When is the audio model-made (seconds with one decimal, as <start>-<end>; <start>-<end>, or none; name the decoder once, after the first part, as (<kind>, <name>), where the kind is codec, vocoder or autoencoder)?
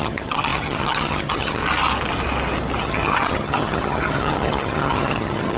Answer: 0.0-1.6 (vocoder, HiFi-GAN); 2.8-5.6